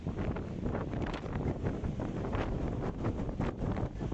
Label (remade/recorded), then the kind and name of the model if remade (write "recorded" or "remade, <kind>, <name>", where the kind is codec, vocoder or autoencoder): recorded